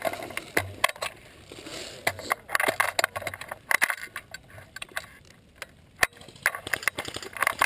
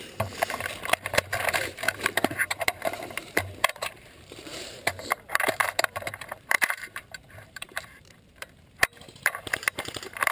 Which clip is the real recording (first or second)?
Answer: first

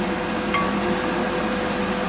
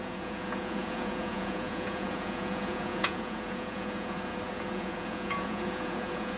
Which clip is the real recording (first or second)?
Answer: first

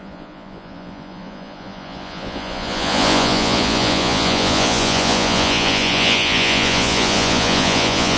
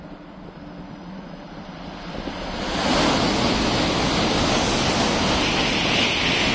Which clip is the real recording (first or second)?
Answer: second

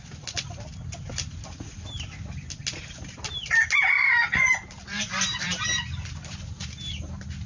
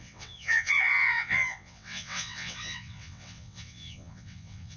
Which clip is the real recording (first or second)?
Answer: first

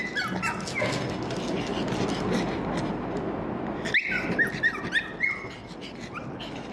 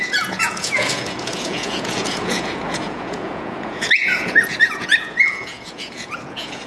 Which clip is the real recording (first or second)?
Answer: first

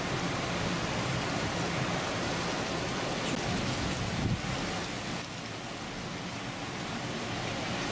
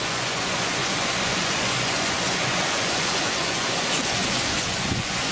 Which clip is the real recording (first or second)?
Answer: first